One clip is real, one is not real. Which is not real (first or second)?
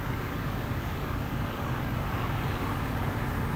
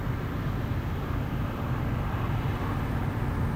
first